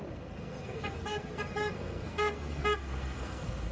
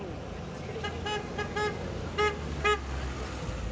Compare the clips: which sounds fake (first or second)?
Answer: first